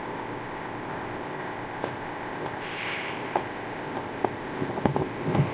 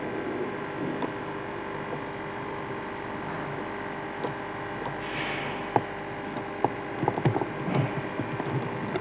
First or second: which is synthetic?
first